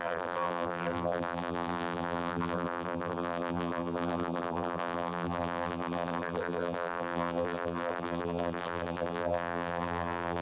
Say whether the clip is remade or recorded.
remade